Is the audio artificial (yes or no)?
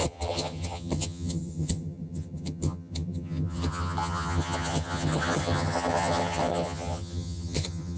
yes